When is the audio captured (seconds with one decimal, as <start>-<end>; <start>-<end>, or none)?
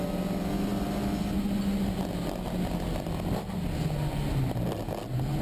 0.0-5.4